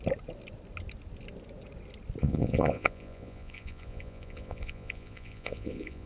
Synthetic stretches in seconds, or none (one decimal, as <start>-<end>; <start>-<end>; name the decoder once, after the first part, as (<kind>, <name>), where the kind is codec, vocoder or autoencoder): 2.2-6.1 (vocoder, Vocos)